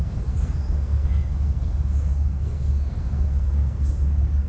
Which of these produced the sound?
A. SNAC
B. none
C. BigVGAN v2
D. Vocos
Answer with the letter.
A